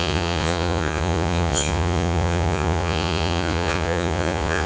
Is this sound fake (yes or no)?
yes